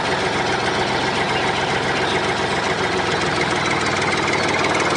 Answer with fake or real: real